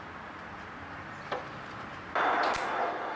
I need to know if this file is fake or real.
real